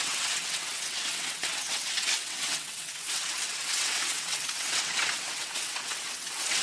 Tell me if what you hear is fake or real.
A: fake